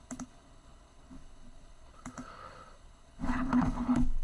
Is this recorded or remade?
remade